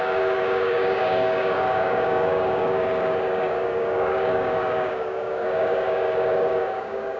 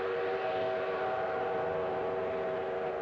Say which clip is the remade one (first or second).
first